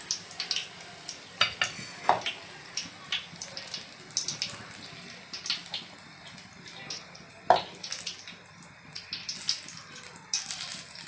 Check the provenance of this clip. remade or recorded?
recorded